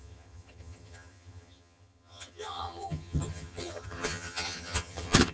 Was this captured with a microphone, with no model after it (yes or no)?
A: no